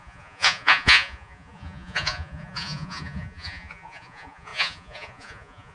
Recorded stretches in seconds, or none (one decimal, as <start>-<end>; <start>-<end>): none